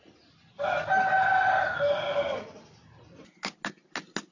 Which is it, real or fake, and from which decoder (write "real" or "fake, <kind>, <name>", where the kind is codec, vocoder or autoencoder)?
real